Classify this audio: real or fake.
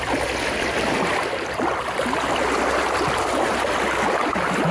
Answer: real